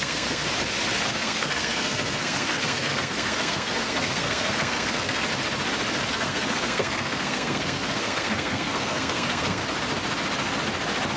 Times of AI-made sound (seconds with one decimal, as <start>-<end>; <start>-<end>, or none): 0.0-0.4; 1.1-5.3; 6.1-9.6